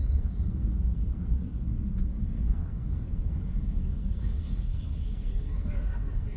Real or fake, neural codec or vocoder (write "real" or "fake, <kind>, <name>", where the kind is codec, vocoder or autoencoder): fake, codec, SNAC